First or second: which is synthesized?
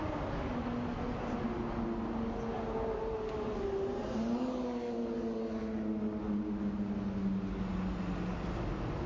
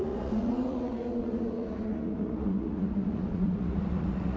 second